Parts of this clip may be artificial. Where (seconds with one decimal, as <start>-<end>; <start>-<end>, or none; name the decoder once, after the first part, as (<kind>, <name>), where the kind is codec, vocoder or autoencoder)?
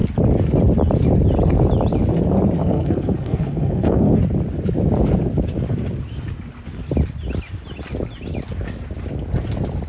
2.6-4.2 (codec, SNAC)